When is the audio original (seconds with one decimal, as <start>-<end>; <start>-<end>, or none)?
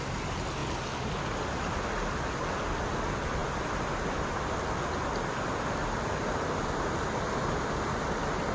0.0-8.5